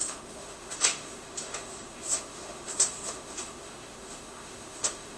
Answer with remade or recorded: remade